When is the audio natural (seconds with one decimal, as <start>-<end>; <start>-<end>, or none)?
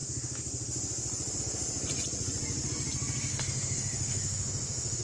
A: 0.0-3.3